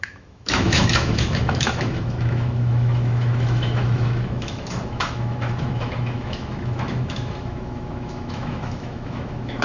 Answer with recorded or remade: remade